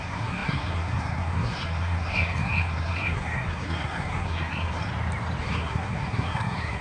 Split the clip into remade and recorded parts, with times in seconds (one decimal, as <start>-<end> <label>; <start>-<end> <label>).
0.0-4.9 remade; 4.9-5.4 recorded; 5.4-6.8 remade